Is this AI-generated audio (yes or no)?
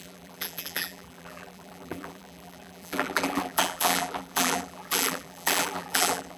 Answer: yes